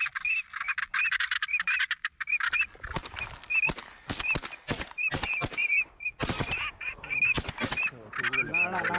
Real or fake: real